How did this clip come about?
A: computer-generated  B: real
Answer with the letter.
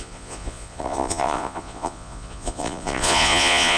A